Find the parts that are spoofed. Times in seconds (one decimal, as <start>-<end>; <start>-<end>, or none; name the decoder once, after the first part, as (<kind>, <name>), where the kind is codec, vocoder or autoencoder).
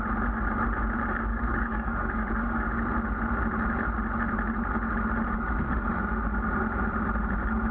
1.3-2.8 (codec, DAC)